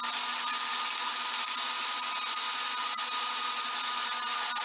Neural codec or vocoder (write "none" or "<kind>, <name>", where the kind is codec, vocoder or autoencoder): none